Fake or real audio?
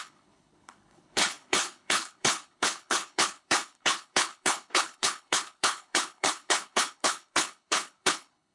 fake